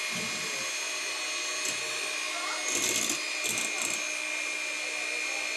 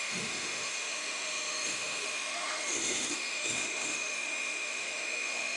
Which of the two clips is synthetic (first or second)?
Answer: second